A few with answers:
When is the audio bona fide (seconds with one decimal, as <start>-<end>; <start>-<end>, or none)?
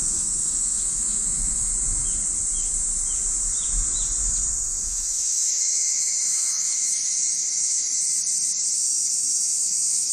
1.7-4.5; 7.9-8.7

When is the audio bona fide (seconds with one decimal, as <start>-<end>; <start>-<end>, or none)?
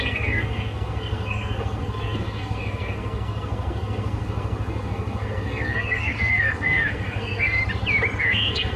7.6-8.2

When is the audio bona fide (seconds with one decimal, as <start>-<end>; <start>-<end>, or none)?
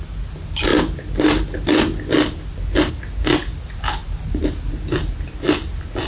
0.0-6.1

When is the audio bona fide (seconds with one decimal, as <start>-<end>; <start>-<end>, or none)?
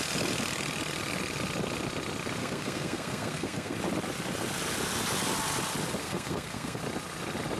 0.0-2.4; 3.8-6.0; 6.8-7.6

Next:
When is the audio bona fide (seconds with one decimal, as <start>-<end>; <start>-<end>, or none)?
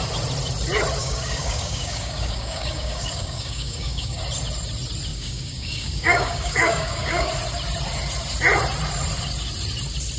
0.0-1.0; 4.2-5.1; 7.3-10.2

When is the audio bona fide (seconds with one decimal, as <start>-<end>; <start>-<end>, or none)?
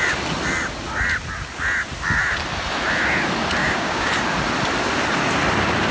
0.0-3.6; 4.1-5.9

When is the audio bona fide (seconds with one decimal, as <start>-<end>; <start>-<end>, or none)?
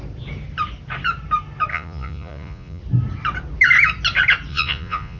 0.0-1.7; 2.8-4.5